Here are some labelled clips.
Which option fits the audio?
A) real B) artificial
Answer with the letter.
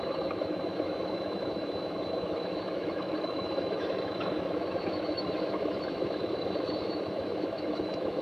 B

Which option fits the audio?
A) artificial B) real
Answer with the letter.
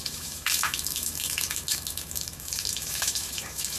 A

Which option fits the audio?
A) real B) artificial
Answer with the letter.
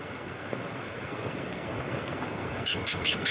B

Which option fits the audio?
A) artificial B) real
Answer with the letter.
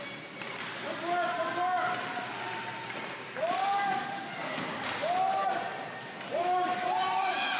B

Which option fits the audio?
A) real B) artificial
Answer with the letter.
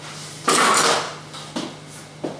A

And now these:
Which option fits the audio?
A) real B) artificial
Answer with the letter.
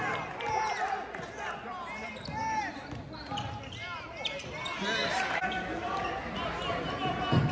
A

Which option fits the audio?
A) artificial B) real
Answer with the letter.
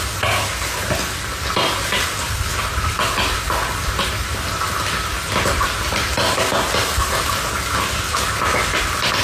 B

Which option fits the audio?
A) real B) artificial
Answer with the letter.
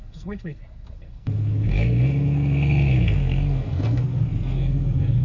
B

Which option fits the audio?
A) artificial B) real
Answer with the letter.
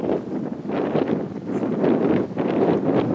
B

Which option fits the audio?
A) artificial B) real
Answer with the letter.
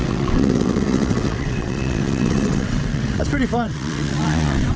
A